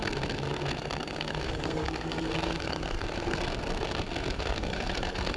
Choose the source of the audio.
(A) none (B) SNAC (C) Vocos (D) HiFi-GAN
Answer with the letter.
B